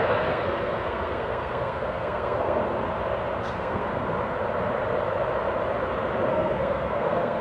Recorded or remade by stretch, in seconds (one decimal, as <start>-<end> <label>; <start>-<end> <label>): 0.0-2.6 remade; 2.6-3.4 recorded; 3.4-3.9 remade; 3.9-6.3 recorded; 6.3-7.4 remade